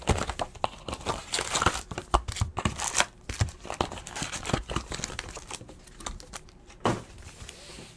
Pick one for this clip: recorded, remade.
recorded